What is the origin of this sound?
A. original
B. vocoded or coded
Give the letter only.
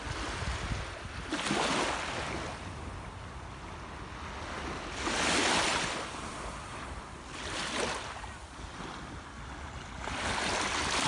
A